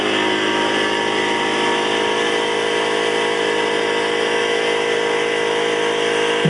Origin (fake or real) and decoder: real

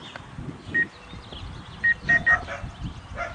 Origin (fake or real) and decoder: real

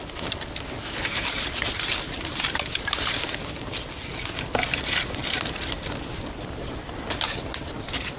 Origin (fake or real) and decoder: real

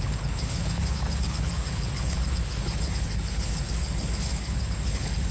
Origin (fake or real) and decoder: fake, codec, HILCodec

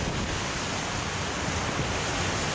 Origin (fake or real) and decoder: real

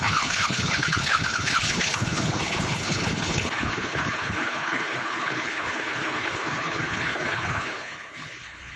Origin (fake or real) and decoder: fake, codec, HILCodec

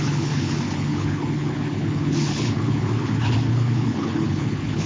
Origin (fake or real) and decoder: fake, codec, HILCodec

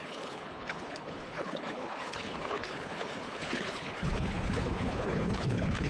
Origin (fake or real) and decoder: fake, codec, HILCodec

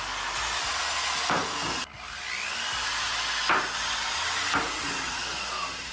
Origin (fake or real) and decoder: real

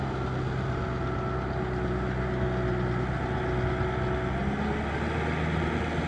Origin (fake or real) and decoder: real